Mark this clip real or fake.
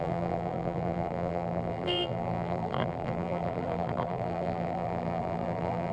fake